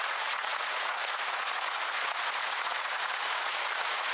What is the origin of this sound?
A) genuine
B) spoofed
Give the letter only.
B